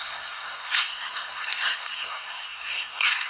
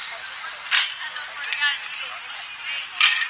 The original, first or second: second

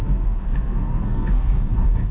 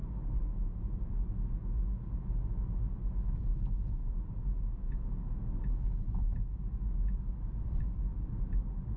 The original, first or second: second